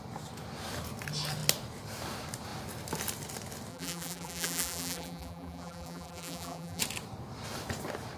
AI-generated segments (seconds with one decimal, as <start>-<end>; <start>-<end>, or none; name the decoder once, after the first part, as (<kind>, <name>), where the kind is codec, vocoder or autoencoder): 3.7-6.8 (vocoder, BigVGAN v2)